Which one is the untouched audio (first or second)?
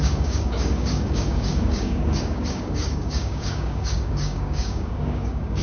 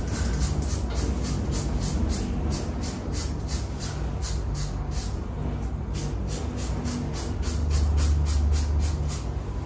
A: second